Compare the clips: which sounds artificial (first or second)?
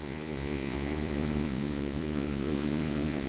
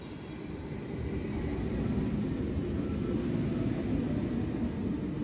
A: first